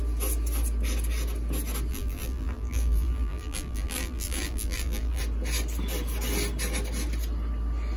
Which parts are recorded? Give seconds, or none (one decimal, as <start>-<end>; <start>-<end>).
0.0-1.9; 5.2-8.0